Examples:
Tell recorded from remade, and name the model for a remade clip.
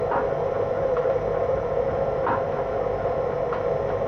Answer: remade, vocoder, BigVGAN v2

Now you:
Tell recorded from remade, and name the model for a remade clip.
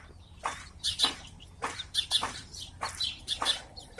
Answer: remade, vocoder, BigVGAN v2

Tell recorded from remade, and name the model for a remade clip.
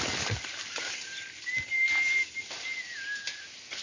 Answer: recorded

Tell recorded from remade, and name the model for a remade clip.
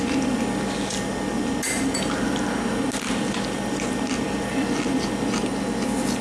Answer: recorded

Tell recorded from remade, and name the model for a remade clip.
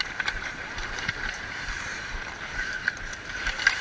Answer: remade, vocoder, BigVGAN v2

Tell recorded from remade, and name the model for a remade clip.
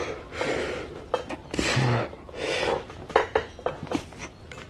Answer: recorded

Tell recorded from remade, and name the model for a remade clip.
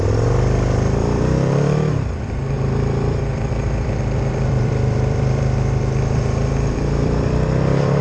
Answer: remade, vocoder, BigVGAN v2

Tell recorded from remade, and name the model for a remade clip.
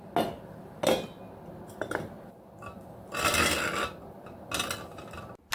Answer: recorded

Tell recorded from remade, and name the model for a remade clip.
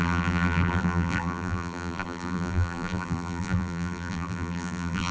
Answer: remade, vocoder, BigVGAN v2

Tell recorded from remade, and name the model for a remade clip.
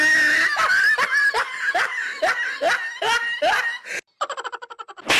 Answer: recorded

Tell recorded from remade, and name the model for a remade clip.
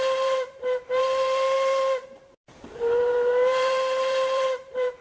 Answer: remade, vocoder, BigVGAN v2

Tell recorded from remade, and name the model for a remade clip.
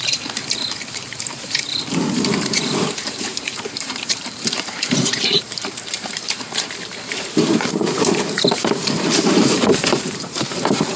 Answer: remade, vocoder, BigVGAN v2